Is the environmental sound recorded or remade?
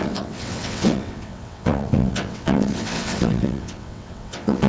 remade